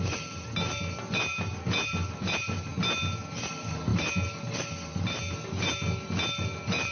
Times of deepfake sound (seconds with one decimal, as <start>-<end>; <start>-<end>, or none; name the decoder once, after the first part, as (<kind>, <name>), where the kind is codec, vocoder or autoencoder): none